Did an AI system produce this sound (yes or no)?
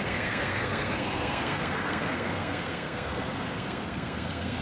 yes